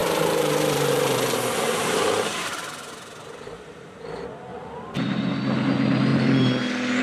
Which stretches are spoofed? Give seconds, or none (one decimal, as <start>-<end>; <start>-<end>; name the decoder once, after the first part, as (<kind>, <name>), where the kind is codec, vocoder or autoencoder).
0.0-2.7 (vocoder, BigVGAN v2); 4.5-5.0